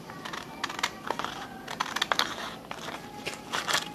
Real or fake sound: real